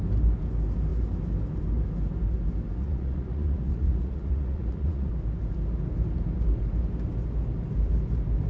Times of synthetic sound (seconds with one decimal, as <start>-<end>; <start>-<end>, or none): 2.8-5.1